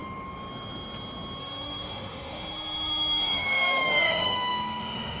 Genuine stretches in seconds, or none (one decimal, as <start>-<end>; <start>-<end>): 0.0-1.4